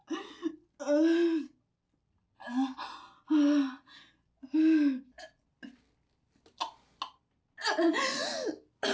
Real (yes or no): yes